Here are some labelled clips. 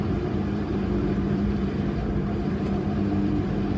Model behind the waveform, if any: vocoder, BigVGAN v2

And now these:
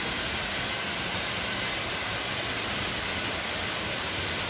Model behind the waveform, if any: none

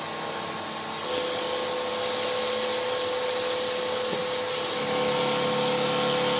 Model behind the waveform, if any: none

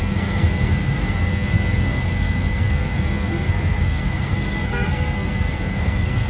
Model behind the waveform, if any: codec, SNAC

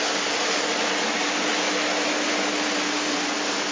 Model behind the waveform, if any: none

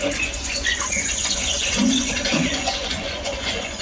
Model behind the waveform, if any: vocoder, Vocos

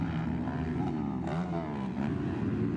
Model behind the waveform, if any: none